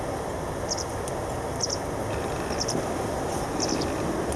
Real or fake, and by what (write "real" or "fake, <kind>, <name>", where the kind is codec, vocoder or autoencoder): real